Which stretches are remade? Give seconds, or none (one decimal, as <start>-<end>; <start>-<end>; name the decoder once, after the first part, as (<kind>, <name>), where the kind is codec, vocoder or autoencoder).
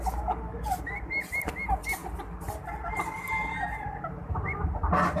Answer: none